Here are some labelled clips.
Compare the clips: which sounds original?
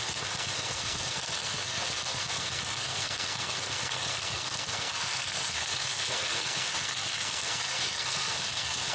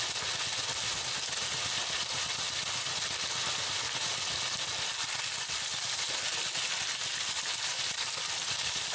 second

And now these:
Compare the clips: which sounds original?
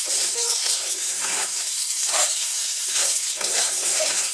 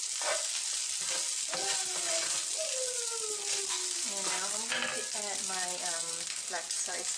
second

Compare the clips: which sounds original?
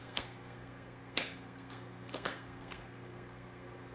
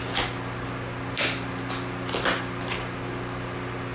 second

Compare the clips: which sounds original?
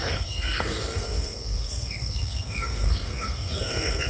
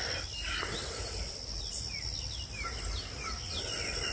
second